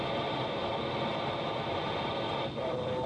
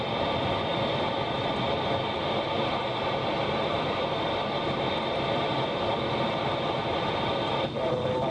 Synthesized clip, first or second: second